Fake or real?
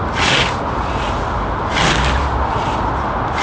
real